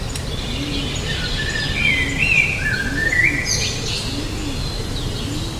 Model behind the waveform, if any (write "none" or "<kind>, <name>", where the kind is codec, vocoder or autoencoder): none